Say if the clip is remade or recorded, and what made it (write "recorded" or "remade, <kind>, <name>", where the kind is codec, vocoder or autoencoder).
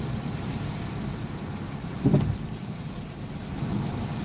recorded